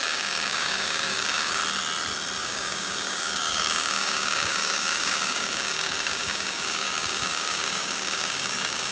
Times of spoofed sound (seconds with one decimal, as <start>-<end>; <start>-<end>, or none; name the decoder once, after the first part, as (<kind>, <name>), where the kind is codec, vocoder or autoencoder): 0.0-1.6 (codec, DAC); 2.4-8.9